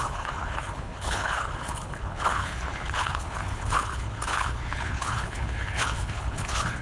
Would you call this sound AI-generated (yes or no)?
yes